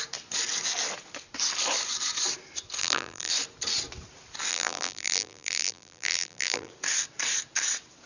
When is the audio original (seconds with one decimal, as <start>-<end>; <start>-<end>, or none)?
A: 0.0-2.8; 3.3-4.5; 6.7-8.1